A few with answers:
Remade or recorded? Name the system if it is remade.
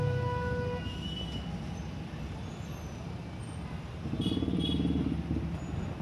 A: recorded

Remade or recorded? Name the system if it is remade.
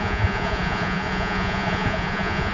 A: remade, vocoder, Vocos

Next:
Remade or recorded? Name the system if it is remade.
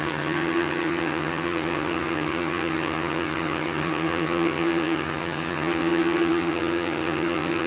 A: remade, vocoder, HiFi-GAN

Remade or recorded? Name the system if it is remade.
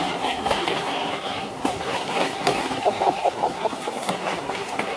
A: remade, codec, SNAC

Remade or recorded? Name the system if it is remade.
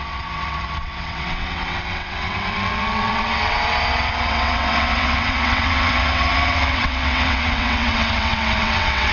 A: remade, vocoder, WaveNeXt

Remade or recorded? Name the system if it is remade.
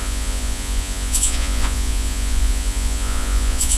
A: remade, vocoder, Vocos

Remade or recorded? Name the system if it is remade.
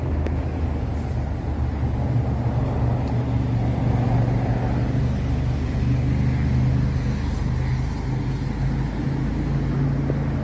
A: recorded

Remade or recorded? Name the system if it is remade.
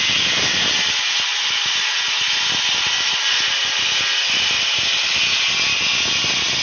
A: recorded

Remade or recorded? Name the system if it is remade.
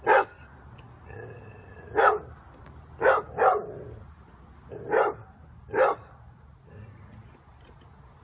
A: recorded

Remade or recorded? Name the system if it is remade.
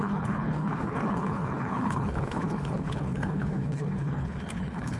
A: remade, codec, HILCodec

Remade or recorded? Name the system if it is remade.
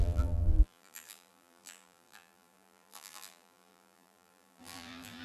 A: remade, vocoder, BigVGAN v2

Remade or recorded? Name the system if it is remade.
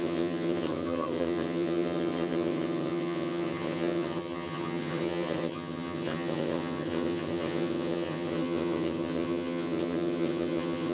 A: remade, vocoder, HiFi-GAN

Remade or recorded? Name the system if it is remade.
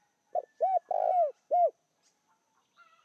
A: recorded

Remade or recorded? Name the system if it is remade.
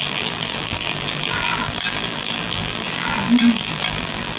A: remade, vocoder, BigVGAN v2